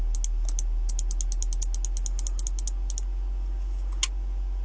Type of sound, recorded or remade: recorded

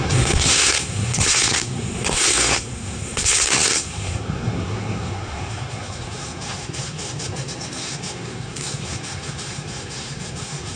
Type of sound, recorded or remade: remade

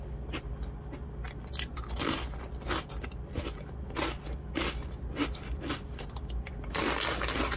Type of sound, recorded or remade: recorded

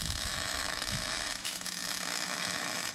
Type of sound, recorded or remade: remade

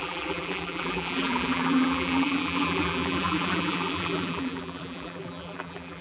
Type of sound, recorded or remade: remade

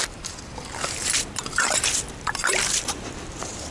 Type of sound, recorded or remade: remade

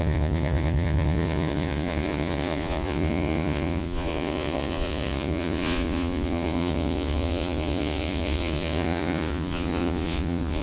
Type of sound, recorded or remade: remade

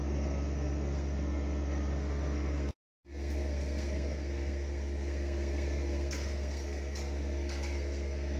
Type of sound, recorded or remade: remade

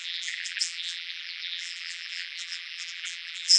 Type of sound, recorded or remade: remade